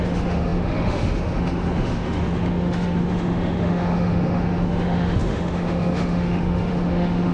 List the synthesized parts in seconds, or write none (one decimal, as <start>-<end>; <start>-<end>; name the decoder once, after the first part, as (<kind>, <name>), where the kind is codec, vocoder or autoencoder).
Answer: 0.0-7.3 (autoencoder, DAC-VAE)